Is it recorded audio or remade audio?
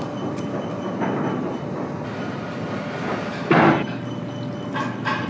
recorded